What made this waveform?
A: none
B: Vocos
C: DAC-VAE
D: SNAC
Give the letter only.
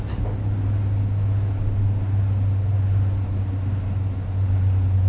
A